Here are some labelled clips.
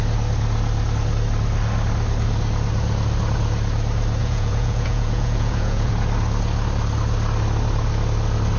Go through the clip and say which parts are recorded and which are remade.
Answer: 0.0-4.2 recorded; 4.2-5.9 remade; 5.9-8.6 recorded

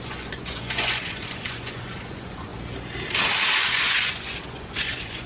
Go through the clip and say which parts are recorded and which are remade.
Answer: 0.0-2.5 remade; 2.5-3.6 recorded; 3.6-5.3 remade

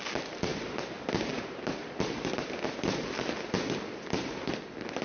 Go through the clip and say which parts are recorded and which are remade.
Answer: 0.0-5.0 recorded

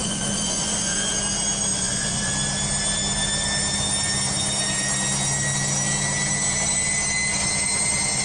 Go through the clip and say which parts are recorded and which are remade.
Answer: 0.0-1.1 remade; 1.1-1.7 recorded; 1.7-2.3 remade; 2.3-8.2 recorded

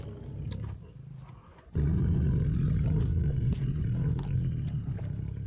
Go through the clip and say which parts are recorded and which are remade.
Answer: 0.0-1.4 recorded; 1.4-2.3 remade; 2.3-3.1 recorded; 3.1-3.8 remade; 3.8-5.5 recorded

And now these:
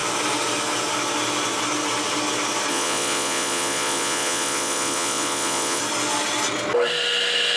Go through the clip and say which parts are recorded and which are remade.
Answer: 0.0-2.7 recorded; 2.7-5.8 remade; 5.8-7.6 recorded

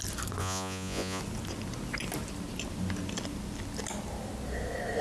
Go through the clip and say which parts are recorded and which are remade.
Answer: 0.0-0.4 recorded; 0.4-1.2 remade; 1.2-5.0 recorded

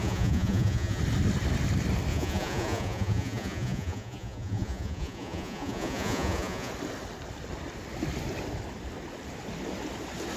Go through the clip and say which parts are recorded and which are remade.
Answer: 0.0-1.0 remade; 1.0-2.1 recorded; 2.1-6.7 remade; 6.7-10.4 recorded